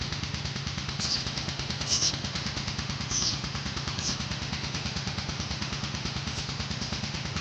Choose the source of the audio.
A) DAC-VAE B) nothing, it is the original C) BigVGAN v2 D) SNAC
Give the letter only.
A